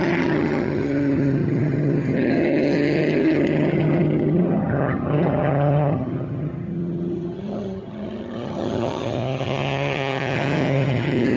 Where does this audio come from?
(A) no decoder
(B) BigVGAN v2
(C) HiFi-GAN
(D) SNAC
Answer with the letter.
C